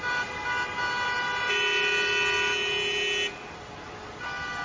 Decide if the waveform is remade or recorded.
recorded